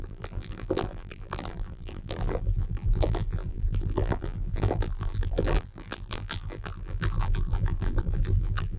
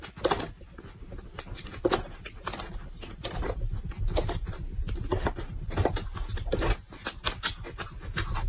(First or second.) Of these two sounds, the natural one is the second